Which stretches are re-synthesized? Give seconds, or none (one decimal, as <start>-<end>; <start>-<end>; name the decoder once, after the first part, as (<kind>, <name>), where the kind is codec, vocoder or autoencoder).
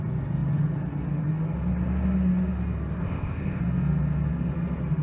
3.0-3.6 (codec, ZipCodec)